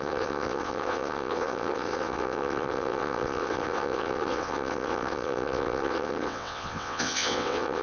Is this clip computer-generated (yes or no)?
yes